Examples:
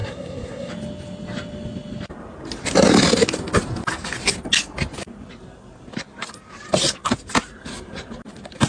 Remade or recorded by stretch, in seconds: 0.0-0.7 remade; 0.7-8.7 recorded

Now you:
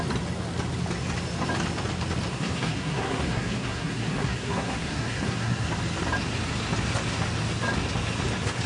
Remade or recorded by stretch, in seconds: 0.0-2.3 recorded; 2.3-5.7 remade; 5.7-8.7 recorded

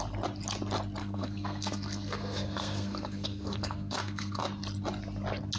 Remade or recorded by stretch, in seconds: 0.0-1.0 recorded; 1.0-4.4 remade; 4.4-5.6 recorded

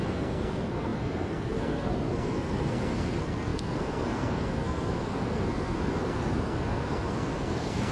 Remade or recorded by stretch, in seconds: 0.0-7.9 remade

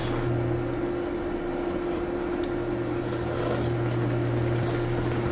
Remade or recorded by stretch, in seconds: 0.0-5.3 recorded

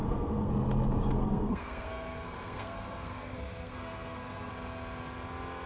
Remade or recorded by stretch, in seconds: 0.0-0.5 remade; 0.5-1.1 recorded; 1.1-4.5 remade; 4.5-5.7 recorded